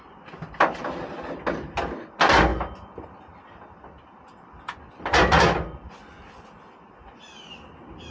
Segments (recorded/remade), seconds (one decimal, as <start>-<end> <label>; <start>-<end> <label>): 0.0-8.1 recorded